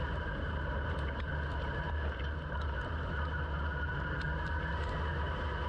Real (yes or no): yes